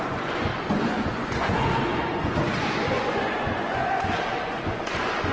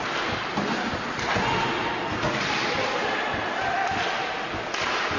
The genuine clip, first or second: second